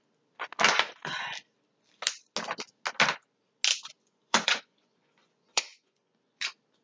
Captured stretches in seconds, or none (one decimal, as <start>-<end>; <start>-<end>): 0.0-4.0; 6.3-6.8

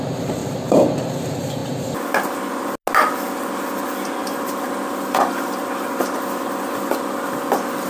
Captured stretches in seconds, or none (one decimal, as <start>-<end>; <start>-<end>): 0.4-1.2; 1.6-3.8

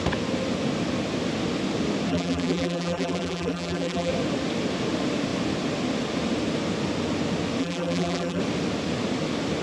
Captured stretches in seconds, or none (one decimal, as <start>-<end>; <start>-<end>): 0.0-2.1; 4.1-7.6; 8.4-9.6

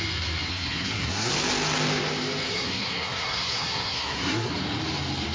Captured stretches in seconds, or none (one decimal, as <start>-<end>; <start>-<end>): 0.0-0.5; 1.3-2.5; 4.5-5.3

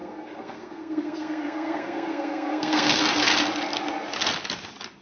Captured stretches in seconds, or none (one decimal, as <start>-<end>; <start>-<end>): 3.0-5.0